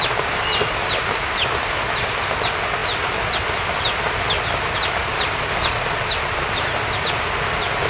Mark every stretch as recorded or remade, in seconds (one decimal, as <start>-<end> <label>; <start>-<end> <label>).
0.0-7.9 recorded